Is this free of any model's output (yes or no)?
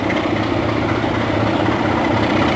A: yes